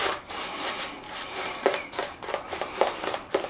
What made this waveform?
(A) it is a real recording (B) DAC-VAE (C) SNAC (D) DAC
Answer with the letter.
A